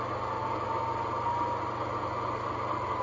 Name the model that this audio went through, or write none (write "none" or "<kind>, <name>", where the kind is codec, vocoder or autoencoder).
none